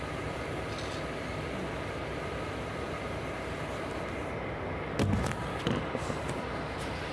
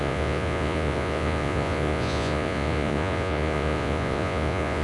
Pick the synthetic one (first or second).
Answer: second